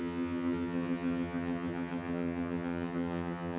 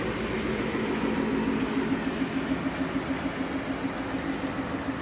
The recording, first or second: second